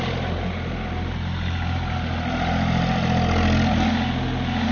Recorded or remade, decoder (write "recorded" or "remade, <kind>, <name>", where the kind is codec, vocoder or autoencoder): recorded